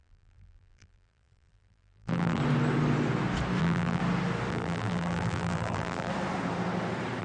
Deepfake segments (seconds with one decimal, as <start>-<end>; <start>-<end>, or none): 0.0-2.4; 3.6-4.0; 4.5-6.1